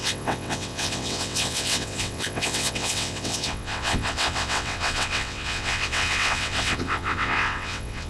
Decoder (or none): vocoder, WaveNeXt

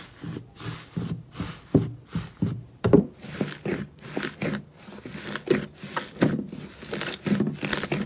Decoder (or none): none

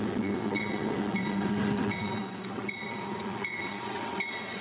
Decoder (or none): vocoder, WaveNeXt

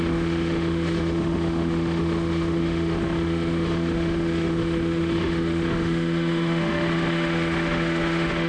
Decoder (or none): autoencoder, DAC-VAE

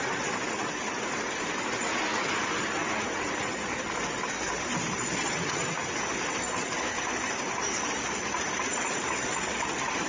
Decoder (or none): none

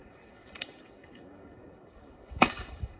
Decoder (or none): codec, DAC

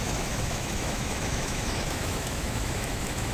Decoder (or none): autoencoder, DAC-VAE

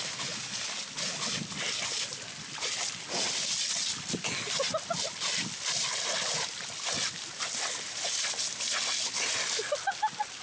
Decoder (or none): none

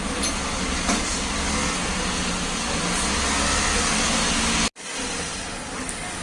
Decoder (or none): none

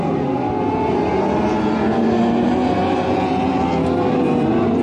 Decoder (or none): none